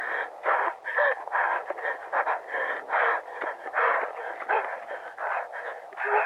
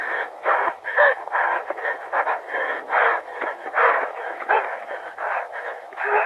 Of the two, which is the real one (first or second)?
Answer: first